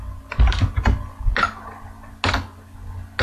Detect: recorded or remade recorded